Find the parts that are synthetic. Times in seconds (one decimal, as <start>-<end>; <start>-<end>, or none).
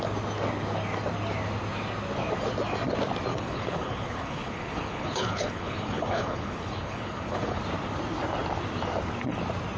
3.3-7.6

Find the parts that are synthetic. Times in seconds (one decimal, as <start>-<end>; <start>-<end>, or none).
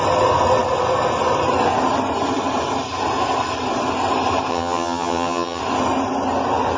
4.5-5.6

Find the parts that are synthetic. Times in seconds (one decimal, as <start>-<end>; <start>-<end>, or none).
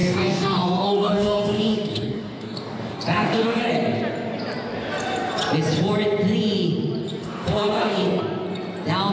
0.0-3.7; 7.2-8.2